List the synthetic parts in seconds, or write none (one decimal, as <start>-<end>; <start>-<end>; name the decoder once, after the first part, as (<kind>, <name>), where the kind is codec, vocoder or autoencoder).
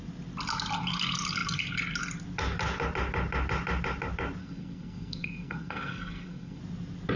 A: 4.4-6.6 (codec, SNAC)